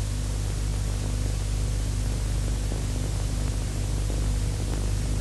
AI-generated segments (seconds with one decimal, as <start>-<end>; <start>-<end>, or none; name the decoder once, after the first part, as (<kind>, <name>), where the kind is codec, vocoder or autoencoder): none